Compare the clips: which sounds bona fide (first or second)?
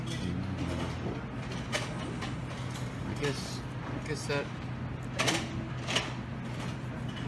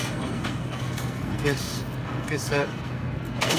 first